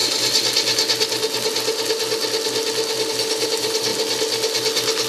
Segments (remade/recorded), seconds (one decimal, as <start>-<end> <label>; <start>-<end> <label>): 0.0-3.1 recorded; 3.1-3.9 remade; 3.9-5.1 recorded